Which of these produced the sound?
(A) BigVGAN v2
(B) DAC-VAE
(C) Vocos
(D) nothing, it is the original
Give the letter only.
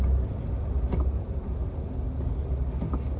D